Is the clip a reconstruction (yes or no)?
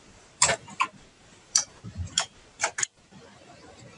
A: yes